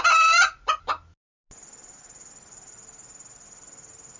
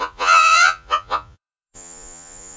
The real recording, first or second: first